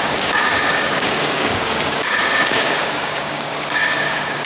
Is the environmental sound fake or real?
fake